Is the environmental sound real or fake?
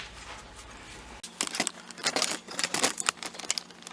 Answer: real